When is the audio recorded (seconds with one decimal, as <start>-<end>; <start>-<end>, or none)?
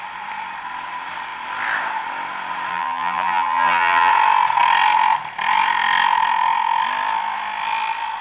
0.0-2.7; 4.1-8.2